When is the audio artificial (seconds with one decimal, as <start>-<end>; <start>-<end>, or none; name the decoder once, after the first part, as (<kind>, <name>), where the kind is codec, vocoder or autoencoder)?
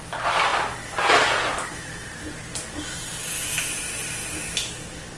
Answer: 0.0-4.2 (vocoder, BigVGAN v2)